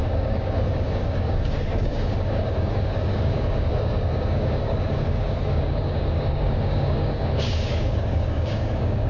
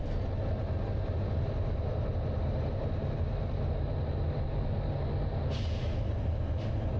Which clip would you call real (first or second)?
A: second